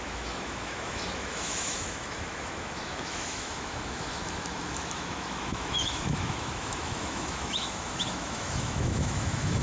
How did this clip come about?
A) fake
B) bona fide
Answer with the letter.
A